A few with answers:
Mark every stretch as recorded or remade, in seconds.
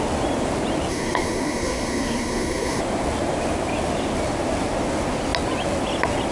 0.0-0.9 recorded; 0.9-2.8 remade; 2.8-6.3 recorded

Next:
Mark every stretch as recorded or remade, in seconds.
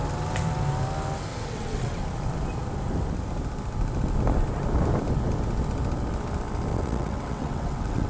0.0-1.3 recorded; 1.3-2.0 remade; 2.0-6.7 recorded; 6.7-8.1 remade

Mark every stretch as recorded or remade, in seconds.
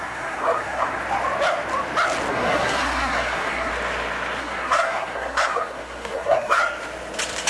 0.0-1.0 remade; 1.0-2.3 recorded; 2.3-3.7 remade; 3.7-4.4 recorded; 4.4-6.6 remade; 6.6-7.5 recorded